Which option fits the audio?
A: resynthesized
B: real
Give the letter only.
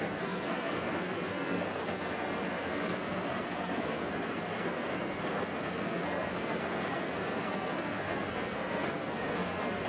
A